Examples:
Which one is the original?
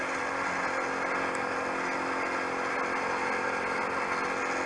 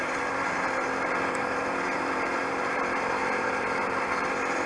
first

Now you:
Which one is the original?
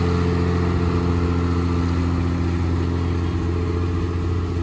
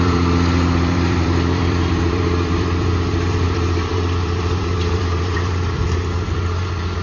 first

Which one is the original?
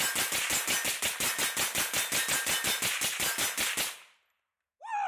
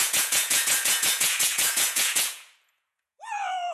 first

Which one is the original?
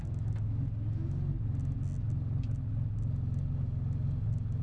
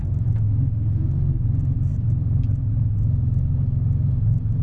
first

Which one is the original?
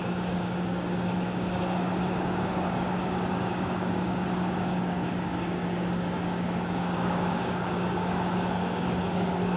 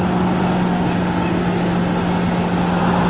second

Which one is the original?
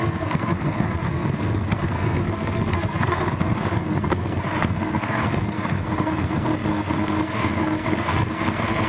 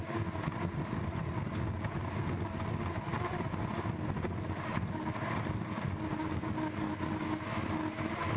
second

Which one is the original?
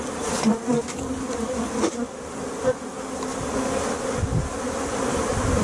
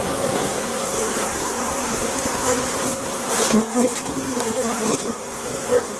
first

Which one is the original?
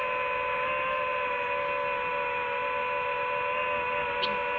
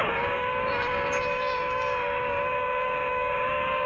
first